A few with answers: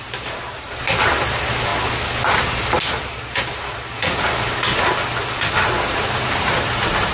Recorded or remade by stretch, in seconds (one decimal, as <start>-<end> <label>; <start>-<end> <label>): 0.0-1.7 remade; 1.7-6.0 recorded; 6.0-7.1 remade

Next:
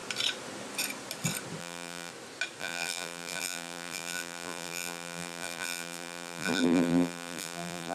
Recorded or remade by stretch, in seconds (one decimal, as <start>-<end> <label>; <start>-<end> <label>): 0.0-1.6 recorded; 1.6-2.1 remade; 2.1-2.6 recorded; 2.6-7.9 remade

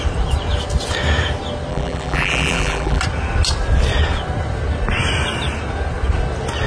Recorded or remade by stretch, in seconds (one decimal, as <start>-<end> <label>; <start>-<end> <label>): 0.0-1.7 recorded; 1.7-3.0 remade; 3.0-6.7 recorded

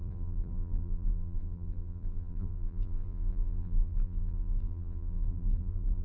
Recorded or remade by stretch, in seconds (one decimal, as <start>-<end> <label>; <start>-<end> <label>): 0.0-6.0 remade

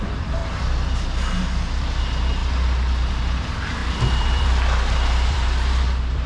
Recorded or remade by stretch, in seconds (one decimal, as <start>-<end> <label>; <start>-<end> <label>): 0.0-0.4 remade; 0.4-1.8 recorded; 1.8-2.4 remade; 2.4-3.1 recorded; 3.1-6.3 remade

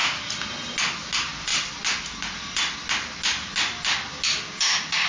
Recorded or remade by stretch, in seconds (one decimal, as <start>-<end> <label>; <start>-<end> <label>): 0.0-0.8 remade; 0.8-1.5 recorded; 1.5-2.2 remade; 2.2-5.1 recorded

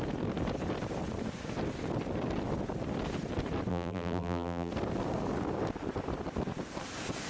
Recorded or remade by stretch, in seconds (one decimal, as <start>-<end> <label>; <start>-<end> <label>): 0.0-3.7 recorded; 3.7-4.7 remade; 4.7-7.3 recorded

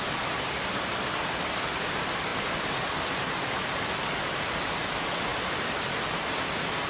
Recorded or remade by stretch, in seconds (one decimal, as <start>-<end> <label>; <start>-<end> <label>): 0.0-5.3 recorded; 5.3-6.1 remade; 6.1-6.9 recorded